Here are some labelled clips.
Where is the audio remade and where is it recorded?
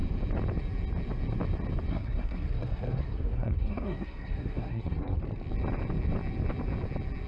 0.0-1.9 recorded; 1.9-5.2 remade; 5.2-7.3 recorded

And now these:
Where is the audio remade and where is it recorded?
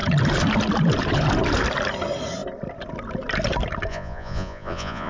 0.0-3.9 recorded; 3.9-5.1 remade